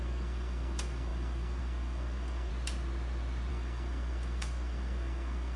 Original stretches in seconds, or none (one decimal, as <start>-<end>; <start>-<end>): 2.5-3.5